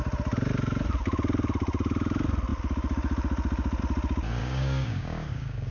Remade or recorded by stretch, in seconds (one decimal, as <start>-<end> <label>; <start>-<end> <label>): 0.0-4.4 recorded; 4.4-5.7 remade